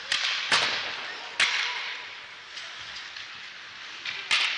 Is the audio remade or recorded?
recorded